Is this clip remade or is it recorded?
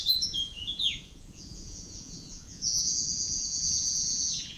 remade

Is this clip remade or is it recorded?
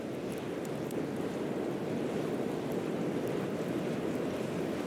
recorded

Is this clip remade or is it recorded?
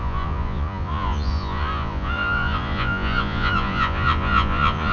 remade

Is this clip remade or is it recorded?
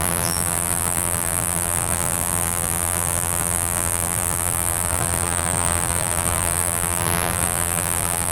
remade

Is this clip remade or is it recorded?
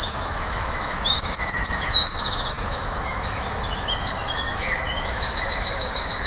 remade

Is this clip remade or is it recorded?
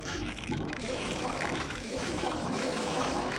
remade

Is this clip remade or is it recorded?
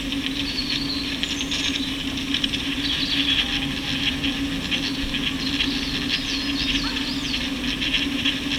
recorded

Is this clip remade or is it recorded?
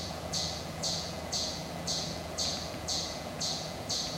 remade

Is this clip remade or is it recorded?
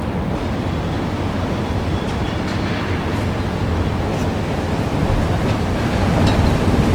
recorded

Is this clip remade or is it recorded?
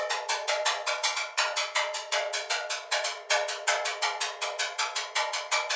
remade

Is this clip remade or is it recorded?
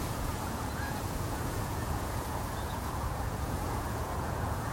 remade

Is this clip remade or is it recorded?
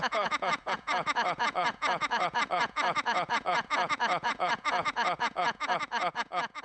remade